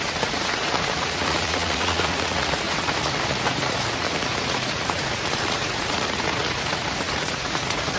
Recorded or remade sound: remade